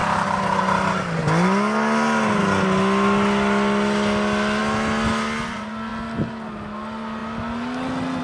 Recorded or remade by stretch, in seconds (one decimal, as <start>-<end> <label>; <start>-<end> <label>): 0.0-8.2 recorded